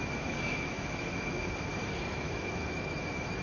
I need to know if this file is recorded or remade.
remade